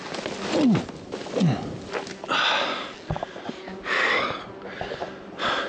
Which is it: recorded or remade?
recorded